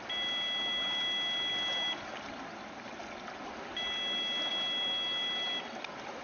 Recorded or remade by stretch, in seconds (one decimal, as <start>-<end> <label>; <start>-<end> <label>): 0.0-6.2 recorded